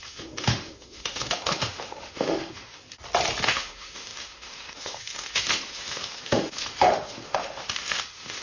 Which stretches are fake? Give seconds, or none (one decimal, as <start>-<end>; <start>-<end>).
0.0-2.8; 3.5-8.4